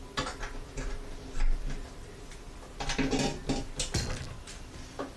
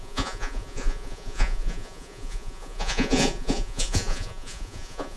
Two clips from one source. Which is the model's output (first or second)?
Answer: second